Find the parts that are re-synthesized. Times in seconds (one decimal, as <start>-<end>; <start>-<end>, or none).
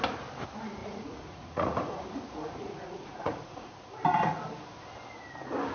0.8-2.0; 2.6-3.7